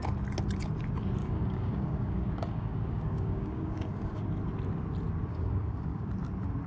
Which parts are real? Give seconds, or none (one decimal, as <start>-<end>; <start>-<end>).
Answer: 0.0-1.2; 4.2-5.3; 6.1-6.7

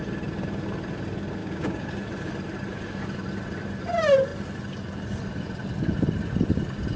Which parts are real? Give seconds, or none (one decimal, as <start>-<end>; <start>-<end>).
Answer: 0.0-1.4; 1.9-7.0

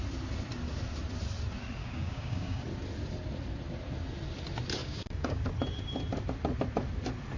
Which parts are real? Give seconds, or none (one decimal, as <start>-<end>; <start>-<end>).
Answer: 0.0-1.8; 2.6-4.8; 5.5-7.4

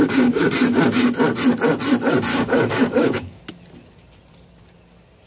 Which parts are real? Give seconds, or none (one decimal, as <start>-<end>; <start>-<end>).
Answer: 0.5-2.3; 3.4-5.3